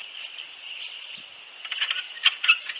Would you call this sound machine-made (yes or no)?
yes